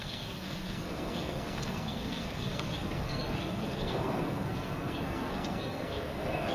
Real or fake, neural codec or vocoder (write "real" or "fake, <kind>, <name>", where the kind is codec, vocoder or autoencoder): fake, codec, SNAC